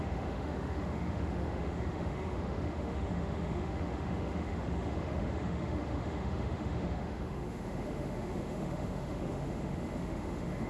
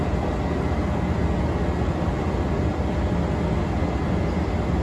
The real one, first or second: second